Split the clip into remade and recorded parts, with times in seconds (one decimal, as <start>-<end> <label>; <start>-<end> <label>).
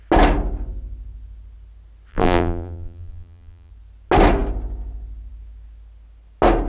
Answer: 0.0-2.1 recorded; 2.1-3.7 remade; 3.7-6.7 recorded